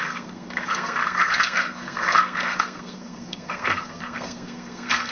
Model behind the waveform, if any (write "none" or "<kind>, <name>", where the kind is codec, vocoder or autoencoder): codec, SNAC